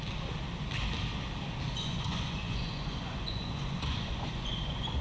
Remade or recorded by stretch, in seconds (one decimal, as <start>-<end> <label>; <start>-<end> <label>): 0.0-1.7 recorded; 1.7-5.0 remade